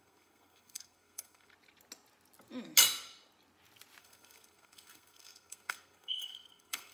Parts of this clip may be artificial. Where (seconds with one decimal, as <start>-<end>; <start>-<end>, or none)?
0.0-1.5; 4.0-6.9